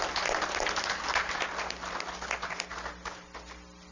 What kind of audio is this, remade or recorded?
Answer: recorded